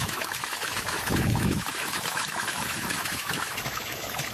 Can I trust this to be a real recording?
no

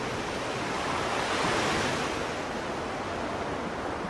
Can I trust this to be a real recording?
yes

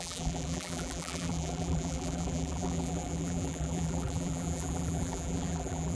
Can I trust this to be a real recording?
no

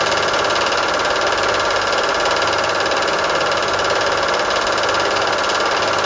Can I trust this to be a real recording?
yes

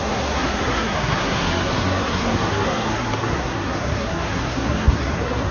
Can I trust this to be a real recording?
no